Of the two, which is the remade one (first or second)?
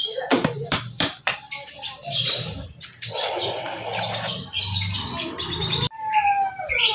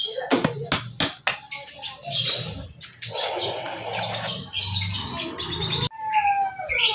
first